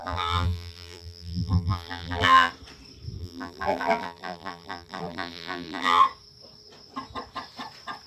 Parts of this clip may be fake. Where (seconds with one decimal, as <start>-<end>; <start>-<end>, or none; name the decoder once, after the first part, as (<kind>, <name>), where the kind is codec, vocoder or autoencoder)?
0.0-2.5 (vocoder, BigVGAN v2); 3.2-6.0